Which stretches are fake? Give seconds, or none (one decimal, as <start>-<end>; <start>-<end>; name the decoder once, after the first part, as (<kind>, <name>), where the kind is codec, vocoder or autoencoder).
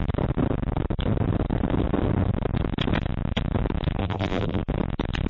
4.0-4.6 (vocoder, BigVGAN v2)